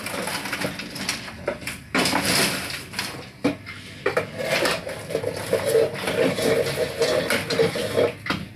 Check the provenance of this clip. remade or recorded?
recorded